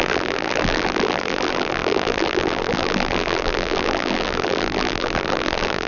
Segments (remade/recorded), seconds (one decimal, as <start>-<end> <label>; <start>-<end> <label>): 0.0-5.9 remade